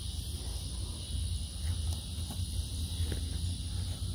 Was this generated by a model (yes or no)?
no